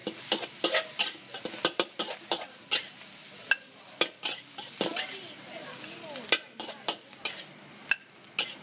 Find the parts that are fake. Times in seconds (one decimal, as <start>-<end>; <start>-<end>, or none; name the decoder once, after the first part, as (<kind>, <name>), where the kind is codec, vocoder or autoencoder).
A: none